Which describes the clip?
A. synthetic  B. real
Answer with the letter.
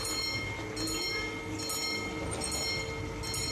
B